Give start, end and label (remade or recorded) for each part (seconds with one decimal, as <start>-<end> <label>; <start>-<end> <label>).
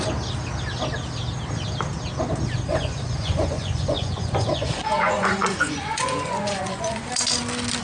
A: 0.0-2.7 recorded; 2.7-7.1 remade; 7.1-7.8 recorded